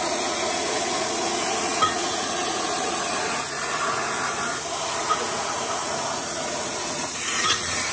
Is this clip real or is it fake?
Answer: fake